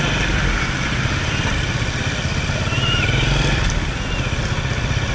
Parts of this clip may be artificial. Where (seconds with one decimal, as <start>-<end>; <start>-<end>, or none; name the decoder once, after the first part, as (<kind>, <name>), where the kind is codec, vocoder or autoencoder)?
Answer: none